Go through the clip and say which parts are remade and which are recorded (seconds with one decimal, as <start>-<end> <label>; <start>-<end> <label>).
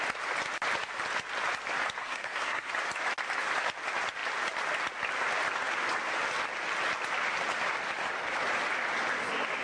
0.0-2.0 recorded; 2.0-2.7 remade; 2.7-9.6 recorded